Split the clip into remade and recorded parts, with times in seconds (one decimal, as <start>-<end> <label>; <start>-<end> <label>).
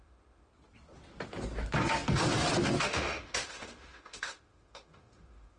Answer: 0.0-0.5 remade; 0.5-2.8 recorded; 2.8-5.6 remade